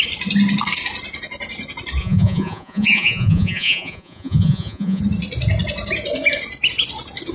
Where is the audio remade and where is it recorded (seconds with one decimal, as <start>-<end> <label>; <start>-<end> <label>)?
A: 0.0-2.0 recorded; 2.0-5.0 remade; 5.0-7.3 recorded